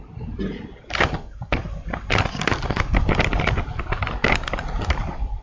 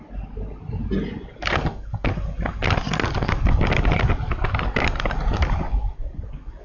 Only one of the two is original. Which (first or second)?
second